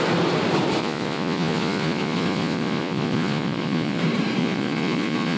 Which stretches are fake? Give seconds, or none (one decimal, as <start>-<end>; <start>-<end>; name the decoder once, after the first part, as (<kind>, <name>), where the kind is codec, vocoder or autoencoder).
0.8-4.0 (vocoder, Vocos); 4.4-5.4